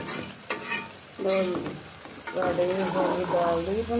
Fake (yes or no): no